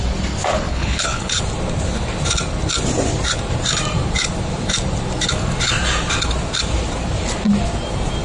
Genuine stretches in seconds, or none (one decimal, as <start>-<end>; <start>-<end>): 0.0-0.7; 1.4-8.2